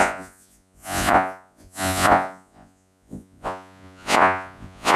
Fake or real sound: fake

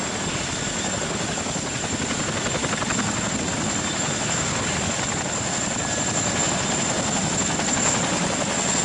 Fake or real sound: real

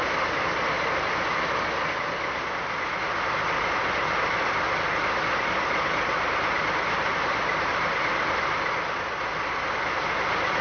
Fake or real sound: real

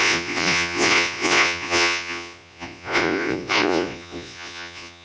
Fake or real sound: fake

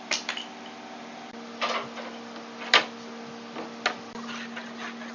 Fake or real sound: real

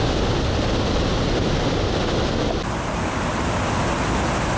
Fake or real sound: real